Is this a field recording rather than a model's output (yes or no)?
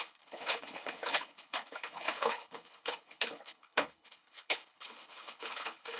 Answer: no